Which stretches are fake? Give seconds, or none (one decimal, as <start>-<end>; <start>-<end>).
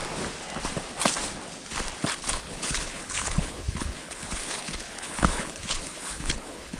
2.3-6.8